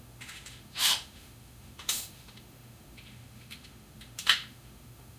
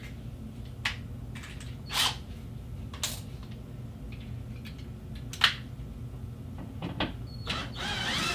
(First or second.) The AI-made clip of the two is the first